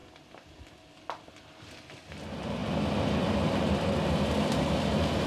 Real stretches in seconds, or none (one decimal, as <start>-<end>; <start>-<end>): 0.0-5.3